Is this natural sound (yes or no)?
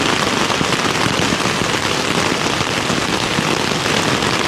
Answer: yes